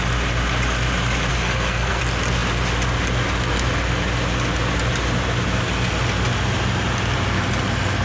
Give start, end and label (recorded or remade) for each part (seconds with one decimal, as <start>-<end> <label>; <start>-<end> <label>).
0.0-1.3 recorded; 1.3-2.0 remade; 2.0-8.0 recorded